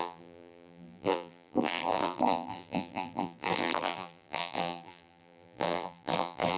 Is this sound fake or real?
fake